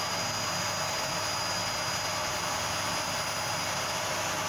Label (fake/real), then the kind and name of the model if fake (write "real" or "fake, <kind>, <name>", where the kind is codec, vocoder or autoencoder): real